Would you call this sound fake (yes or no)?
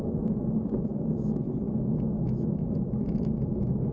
yes